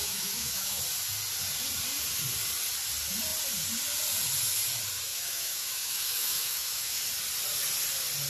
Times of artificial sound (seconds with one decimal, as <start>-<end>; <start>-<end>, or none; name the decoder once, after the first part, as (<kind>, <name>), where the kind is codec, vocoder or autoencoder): 0.0-0.8 (autoencoder, DAC-VAE); 5.1-7.0